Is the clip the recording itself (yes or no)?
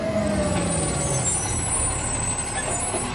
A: yes